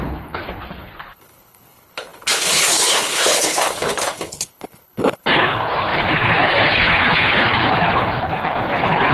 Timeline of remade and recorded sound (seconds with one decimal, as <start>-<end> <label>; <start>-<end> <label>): 0.0-9.1 remade